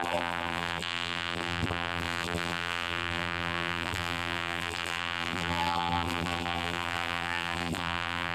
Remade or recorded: remade